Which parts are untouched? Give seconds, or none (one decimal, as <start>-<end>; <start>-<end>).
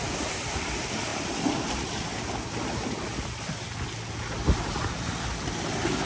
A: 0.0-6.1